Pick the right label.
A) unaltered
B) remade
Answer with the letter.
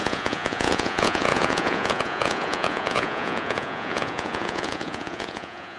B